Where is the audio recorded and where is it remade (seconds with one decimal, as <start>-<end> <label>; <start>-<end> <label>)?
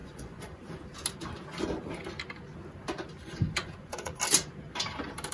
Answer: 0.0-0.8 remade; 0.8-3.6 recorded; 3.6-4.2 remade; 4.2-5.3 recorded